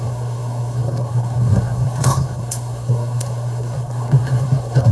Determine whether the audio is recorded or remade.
remade